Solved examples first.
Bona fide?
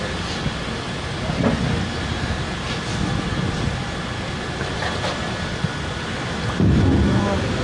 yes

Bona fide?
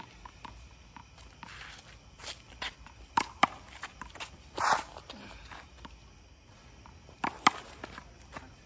yes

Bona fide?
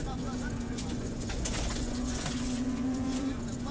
no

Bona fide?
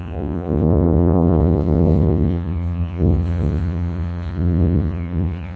no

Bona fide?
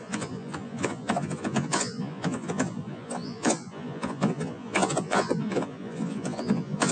no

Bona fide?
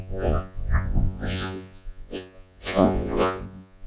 no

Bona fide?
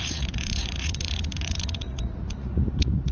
no